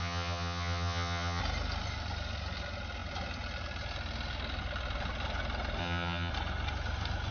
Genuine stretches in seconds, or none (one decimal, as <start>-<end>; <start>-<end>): 1.4-5.8; 6.3-7.3